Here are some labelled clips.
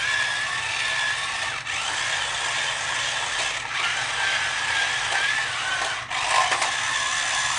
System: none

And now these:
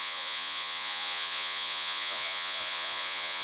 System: vocoder, Vocos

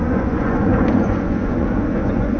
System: vocoder, Vocos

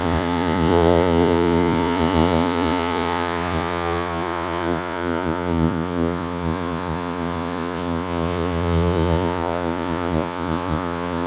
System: vocoder, Vocos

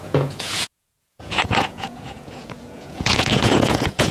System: vocoder, Vocos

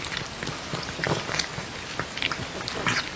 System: none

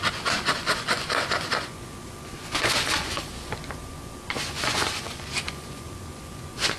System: vocoder, Vocos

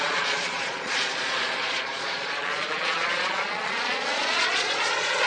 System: vocoder, Vocos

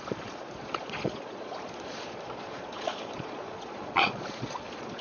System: vocoder, Vocos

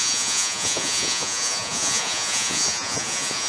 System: vocoder, Vocos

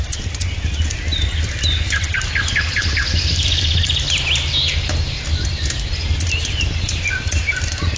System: none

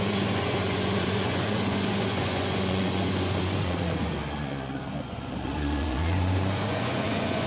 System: vocoder, Vocos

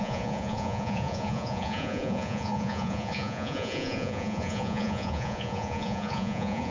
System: vocoder, Vocos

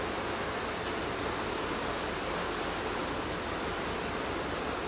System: none